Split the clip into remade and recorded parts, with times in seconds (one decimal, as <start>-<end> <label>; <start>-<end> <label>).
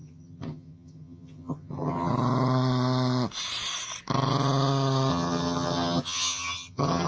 0.0-2.1 remade; 2.1-5.1 recorded; 5.1-7.1 remade